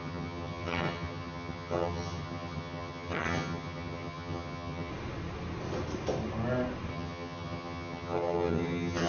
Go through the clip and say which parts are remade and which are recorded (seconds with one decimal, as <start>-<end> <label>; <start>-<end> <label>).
0.0-4.9 remade; 4.9-6.9 recorded; 6.9-9.1 remade